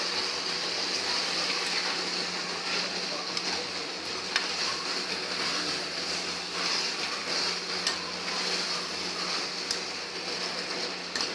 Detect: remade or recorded recorded